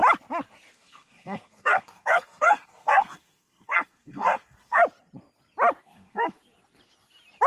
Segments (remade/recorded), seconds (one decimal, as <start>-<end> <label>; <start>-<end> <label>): 0.0-0.7 recorded; 0.7-4.8 remade; 4.8-5.8 recorded; 5.8-6.4 remade; 6.4-7.5 recorded